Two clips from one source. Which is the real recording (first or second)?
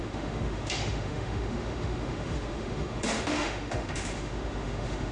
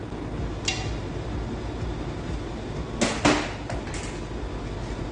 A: second